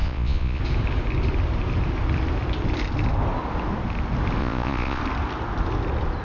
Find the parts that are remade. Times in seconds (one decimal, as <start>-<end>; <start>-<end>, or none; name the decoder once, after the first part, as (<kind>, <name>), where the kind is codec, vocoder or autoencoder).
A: 0.0-0.6 (vocoder, Vocos); 4.4-5.0